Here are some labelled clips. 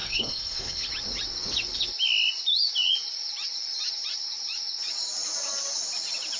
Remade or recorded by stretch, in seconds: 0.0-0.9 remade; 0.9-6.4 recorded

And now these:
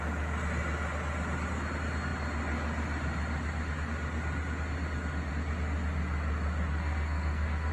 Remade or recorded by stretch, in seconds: 0.0-6.7 recorded; 6.7-7.7 remade